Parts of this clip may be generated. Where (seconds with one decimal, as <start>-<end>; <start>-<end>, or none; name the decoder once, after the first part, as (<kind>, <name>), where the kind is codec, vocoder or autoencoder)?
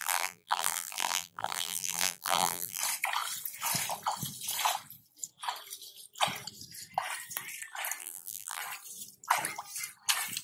0.0-2.8 (vocoder, BigVGAN v2); 8.0-8.6